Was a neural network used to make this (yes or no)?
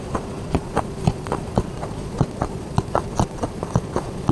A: yes